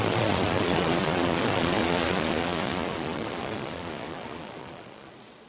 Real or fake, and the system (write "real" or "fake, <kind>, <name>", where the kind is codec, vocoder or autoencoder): fake, vocoder, Vocos